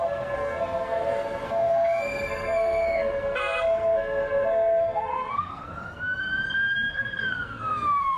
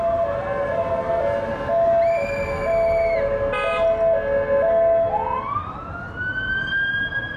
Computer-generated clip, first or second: first